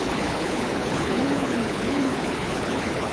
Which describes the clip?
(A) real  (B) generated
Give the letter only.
B